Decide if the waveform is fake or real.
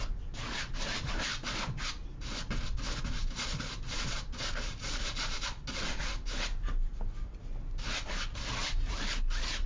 real